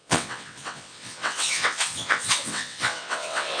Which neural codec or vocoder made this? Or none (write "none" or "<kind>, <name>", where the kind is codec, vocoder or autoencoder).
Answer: vocoder, WaveNeXt